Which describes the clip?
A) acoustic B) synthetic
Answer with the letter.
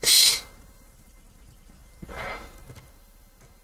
A